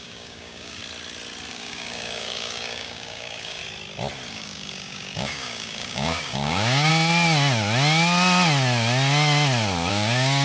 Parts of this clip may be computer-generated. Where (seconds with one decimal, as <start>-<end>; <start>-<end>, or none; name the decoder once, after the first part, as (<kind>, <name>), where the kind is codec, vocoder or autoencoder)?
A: 0.0-0.8 (codec, DAC); 1.5-3.6; 4.3-6.9; 9.9-10.4